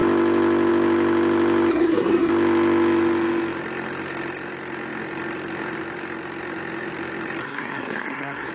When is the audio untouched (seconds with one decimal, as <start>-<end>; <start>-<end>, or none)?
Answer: 0.0-1.7; 2.3-7.4